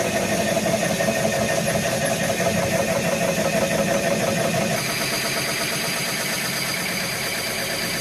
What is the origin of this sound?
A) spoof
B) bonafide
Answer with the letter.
B